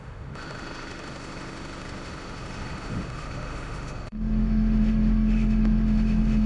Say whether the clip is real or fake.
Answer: fake